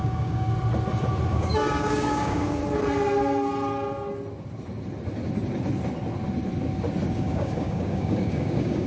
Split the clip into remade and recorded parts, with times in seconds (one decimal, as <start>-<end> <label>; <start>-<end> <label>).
0.0-0.5 remade; 0.5-1.3 recorded; 1.3-2.6 remade; 2.6-7.1 recorded; 7.1-8.9 remade